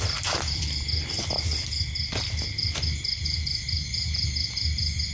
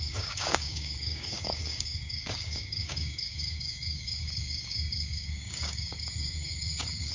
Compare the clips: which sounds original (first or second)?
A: first